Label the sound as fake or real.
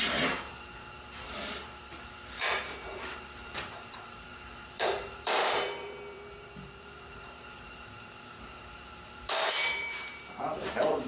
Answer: fake